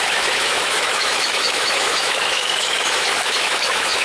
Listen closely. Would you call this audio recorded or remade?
remade